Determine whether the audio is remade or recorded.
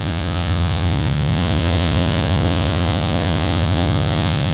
remade